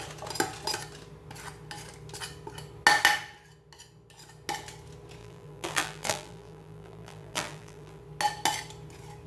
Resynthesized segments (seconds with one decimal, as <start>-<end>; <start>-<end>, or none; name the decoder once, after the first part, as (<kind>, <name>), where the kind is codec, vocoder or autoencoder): 5.2-8.0 (vocoder, BigVGAN v2)